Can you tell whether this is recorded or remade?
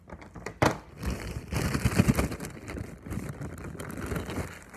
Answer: recorded